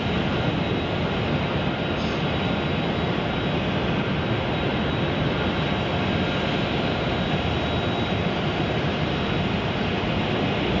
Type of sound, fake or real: real